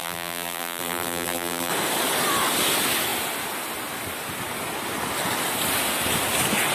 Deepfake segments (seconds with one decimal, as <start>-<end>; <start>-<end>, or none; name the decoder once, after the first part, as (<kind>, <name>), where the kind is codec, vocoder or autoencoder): 0.0-1.7 (vocoder, BigVGAN v2)